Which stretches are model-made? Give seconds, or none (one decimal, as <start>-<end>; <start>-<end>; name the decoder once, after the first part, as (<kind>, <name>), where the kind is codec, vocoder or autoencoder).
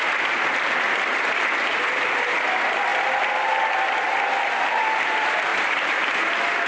2.9-4.0 (vocoder, BigVGAN v2); 5.5-6.1